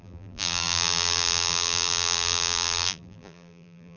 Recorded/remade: remade